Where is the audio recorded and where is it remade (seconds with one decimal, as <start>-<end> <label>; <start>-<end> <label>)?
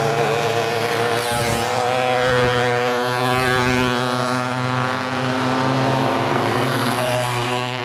0.0-6.3 recorded; 6.3-7.8 remade